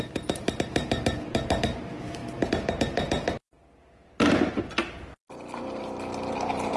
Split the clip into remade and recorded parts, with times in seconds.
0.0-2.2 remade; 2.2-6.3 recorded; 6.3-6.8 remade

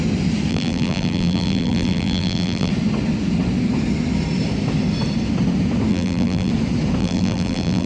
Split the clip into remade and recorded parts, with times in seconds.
0.0-0.5 recorded; 0.5-2.7 remade; 2.7-5.9 recorded; 5.9-6.5 remade; 6.5-7.0 recorded; 7.0-7.9 remade

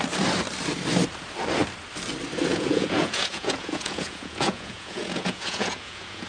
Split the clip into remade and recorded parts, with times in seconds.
0.0-2.5 recorded; 2.5-6.3 remade